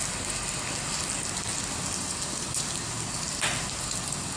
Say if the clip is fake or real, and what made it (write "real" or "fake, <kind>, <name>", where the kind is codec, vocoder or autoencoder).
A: real